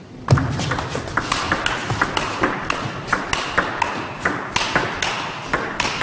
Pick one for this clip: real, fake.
real